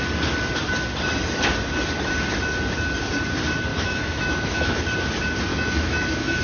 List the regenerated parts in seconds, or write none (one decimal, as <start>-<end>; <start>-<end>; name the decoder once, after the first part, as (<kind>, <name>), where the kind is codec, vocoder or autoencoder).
3.7-4.8 (autoencoder, DAC-VAE); 5.5-6.4